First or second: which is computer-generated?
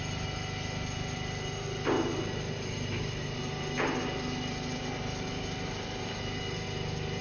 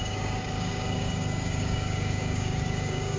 second